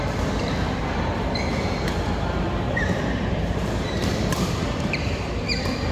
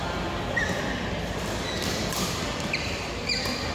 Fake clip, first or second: first